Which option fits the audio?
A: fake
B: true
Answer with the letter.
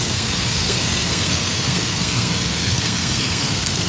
A